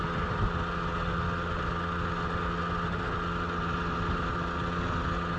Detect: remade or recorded recorded